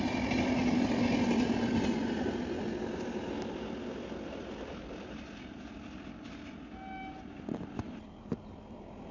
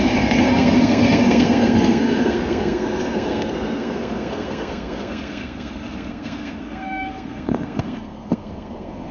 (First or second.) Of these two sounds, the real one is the first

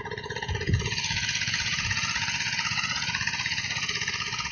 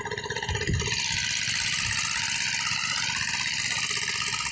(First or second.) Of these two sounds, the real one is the second